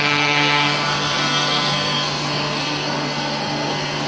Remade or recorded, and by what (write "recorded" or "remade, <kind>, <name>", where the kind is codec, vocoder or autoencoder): remade, codec, SNAC